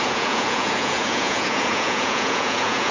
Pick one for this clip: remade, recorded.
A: remade